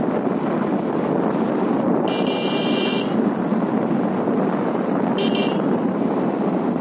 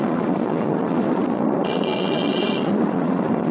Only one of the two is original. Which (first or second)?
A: first